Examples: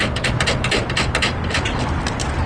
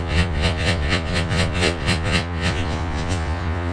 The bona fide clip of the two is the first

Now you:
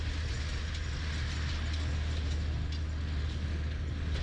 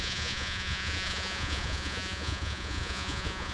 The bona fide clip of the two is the first